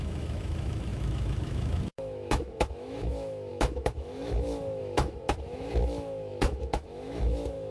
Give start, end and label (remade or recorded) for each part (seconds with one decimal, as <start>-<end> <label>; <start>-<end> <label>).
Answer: 0.0-7.7 remade